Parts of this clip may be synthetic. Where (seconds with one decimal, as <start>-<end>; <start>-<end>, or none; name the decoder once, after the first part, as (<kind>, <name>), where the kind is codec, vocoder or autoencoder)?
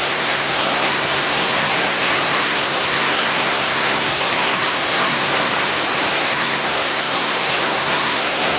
0.0-5.5 (codec, SNAC); 6.1-8.6